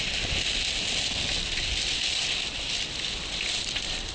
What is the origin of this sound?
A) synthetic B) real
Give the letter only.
B